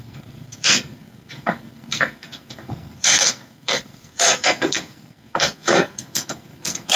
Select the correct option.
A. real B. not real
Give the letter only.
B